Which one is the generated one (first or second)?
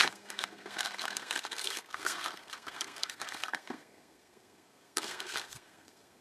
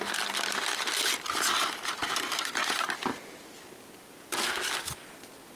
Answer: first